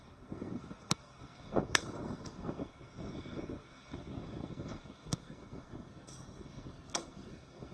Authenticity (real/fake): fake